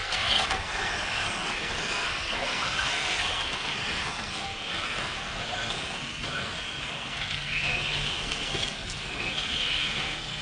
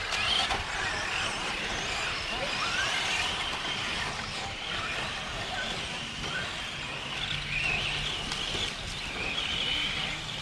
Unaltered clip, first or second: second